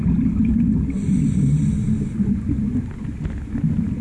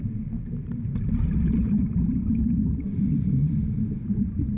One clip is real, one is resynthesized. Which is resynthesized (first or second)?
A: second